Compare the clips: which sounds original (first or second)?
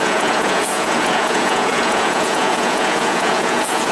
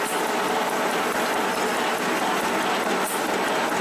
second